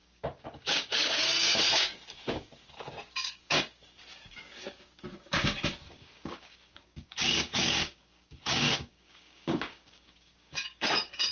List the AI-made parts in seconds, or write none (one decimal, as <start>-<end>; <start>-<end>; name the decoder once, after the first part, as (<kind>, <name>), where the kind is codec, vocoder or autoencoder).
0.0-11.3 (codec, DAC)